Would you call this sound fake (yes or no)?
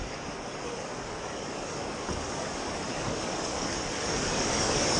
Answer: yes